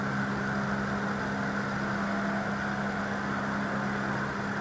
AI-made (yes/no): no